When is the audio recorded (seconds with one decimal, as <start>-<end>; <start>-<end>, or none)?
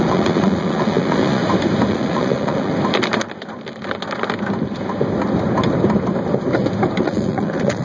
1.4-1.9; 2.7-7.0